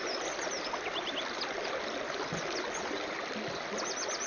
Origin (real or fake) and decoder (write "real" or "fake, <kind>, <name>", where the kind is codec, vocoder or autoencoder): real